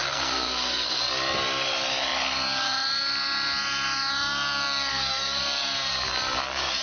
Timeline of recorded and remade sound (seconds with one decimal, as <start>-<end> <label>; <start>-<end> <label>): 0.0-1.0 remade; 1.0-4.9 recorded; 4.9-5.4 remade; 5.4-6.8 recorded